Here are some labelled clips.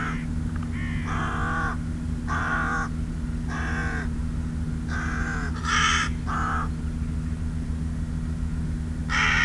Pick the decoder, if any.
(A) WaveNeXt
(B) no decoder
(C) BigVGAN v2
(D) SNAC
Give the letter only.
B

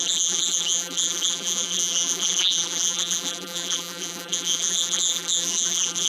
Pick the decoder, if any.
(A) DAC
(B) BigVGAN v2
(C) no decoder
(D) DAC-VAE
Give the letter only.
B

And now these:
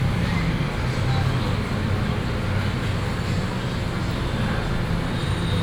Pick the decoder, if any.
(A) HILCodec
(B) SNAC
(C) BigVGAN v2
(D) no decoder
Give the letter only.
D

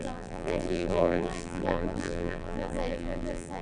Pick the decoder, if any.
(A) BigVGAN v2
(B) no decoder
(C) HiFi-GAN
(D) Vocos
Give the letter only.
A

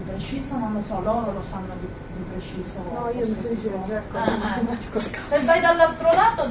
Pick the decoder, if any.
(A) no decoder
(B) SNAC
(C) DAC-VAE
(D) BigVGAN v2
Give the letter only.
D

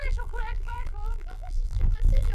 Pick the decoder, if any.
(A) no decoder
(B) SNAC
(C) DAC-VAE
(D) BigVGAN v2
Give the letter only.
D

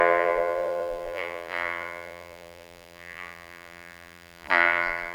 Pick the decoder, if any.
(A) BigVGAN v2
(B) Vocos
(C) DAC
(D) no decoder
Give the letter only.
A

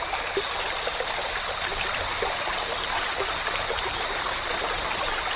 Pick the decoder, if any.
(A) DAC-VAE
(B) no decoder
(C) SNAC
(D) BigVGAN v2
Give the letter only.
D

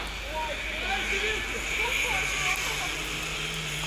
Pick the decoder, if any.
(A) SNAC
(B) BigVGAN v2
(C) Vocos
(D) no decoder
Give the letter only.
D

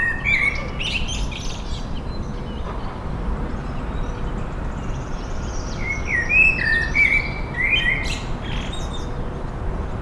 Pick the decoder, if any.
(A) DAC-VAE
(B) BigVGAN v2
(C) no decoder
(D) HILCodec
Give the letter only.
C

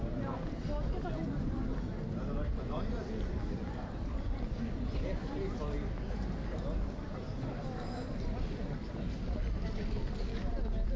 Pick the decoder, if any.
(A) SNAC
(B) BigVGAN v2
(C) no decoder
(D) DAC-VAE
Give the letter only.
C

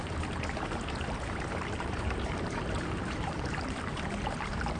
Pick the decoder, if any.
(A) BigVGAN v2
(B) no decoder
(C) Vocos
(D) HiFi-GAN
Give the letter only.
A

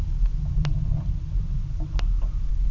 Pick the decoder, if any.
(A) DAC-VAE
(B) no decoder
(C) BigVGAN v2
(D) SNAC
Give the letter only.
B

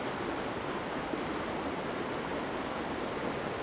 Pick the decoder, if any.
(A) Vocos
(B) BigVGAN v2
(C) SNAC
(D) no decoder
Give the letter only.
B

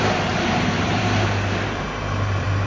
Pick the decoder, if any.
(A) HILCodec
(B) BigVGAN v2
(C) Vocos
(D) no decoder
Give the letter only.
B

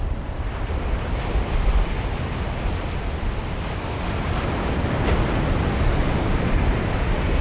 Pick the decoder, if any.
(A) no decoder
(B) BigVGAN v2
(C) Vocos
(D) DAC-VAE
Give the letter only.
A